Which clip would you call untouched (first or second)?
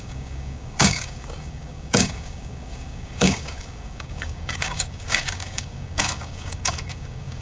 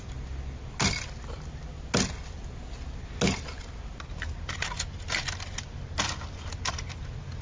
second